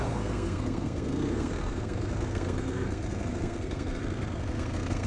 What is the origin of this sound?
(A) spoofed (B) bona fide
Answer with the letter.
A